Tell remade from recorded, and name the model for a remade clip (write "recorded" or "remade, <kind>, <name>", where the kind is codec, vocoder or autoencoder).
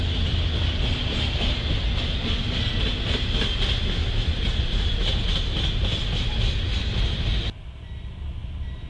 recorded